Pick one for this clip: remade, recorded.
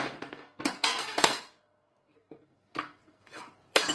remade